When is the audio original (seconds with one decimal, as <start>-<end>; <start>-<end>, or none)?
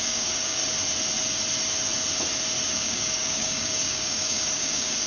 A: 0.6-2.7